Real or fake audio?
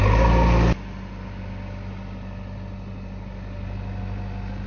real